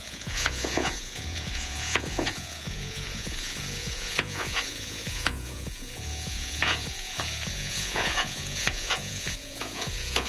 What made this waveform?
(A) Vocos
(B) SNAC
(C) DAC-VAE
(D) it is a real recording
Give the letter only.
A